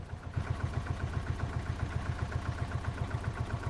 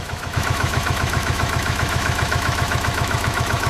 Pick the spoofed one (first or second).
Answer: second